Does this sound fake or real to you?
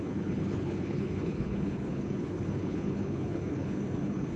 fake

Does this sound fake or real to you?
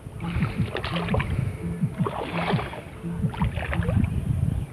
real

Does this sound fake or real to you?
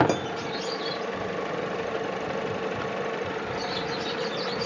real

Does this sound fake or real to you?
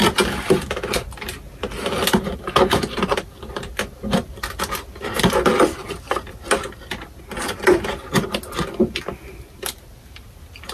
real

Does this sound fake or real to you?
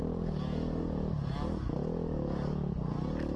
real